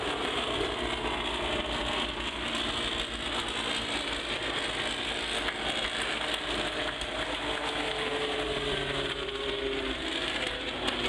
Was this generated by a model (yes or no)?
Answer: no